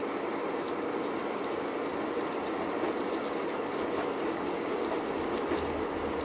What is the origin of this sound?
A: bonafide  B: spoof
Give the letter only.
A